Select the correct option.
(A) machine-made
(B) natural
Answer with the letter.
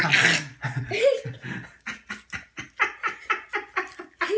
B